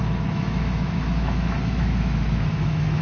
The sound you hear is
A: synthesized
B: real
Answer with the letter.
A